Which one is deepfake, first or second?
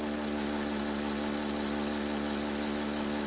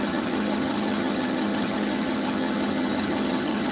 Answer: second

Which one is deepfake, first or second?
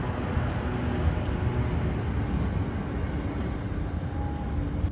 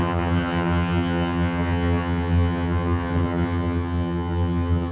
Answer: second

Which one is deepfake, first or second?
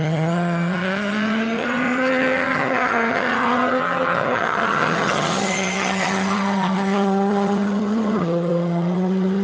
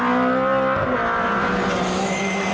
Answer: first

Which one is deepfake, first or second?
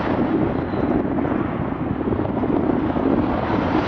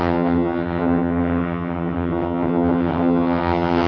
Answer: second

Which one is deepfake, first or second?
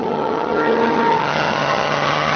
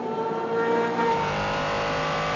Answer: first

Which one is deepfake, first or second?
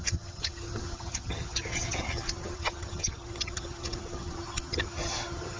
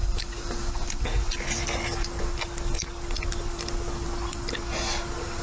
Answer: first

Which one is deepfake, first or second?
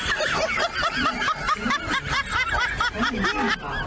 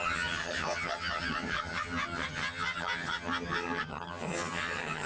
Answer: second